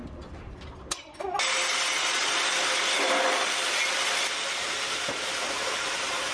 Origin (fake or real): real